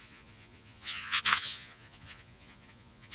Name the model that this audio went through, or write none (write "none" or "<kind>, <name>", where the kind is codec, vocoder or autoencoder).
vocoder, Vocos